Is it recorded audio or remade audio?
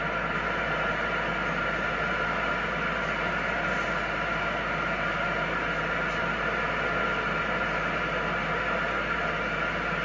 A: recorded